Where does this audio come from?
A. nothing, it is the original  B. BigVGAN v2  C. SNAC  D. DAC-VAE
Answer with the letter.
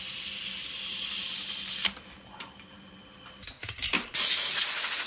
A